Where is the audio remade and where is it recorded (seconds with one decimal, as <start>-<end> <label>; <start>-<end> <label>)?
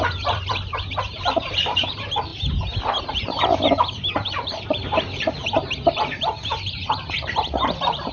0.0-2.3 remade; 2.3-3.0 recorded; 3.0-8.1 remade